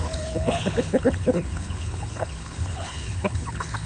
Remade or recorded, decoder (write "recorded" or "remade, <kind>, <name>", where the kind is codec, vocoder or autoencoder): remade, codec, HILCodec